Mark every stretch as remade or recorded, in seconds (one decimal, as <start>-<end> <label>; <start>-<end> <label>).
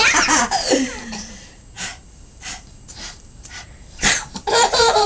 0.0-5.1 remade